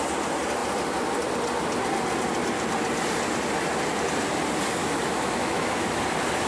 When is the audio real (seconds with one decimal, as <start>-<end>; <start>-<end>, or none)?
0.0-4.8; 6.0-6.5